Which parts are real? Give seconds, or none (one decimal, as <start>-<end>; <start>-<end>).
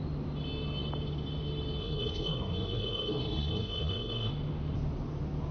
0.0-1.8; 4.3-5.5